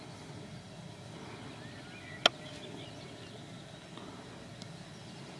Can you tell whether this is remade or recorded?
recorded